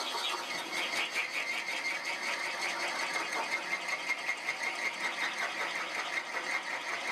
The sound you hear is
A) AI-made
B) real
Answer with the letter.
B